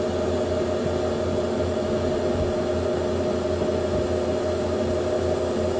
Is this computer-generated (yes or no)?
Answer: no